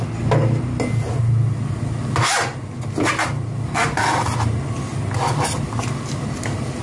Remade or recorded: recorded